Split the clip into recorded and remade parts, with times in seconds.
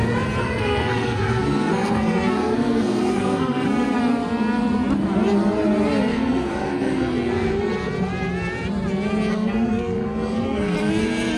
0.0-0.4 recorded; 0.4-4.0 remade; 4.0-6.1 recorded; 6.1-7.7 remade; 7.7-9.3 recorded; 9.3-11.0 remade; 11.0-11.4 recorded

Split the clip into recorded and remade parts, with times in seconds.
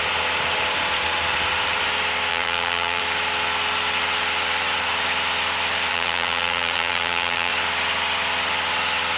0.0-2.3 recorded; 2.3-3.0 remade; 3.0-5.9 recorded; 5.9-7.5 remade; 7.5-9.2 recorded